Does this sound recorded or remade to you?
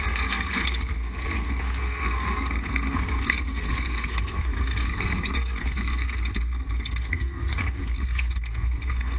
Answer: remade